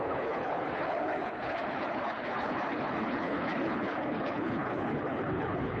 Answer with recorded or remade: remade